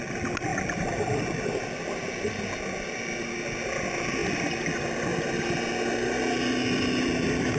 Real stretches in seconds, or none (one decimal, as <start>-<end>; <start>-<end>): 0.0-7.6